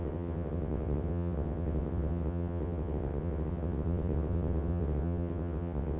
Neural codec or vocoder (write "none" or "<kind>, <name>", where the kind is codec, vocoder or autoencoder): vocoder, WaveNeXt